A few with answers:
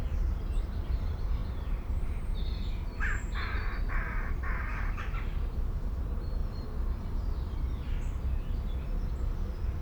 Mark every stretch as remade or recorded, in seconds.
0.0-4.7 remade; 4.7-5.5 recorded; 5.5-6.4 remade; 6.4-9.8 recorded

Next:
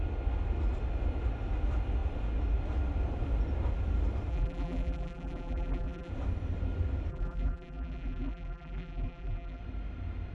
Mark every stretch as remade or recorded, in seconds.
0.0-4.3 recorded; 4.3-6.1 remade; 6.1-7.1 recorded; 7.1-9.6 remade; 9.6-10.3 recorded

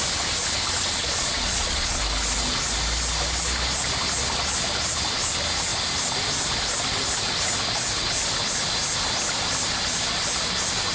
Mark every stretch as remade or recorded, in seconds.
0.0-1.0 recorded; 1.0-2.0 remade; 2.0-10.9 recorded